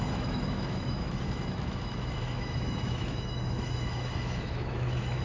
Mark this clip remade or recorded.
remade